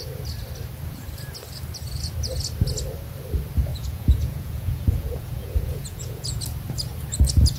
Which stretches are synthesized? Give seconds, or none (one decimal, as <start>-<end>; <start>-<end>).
3.7-6.4